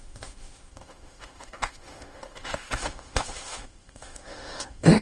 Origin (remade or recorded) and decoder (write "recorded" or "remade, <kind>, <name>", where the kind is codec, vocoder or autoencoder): remade, autoencoder, DAC-VAE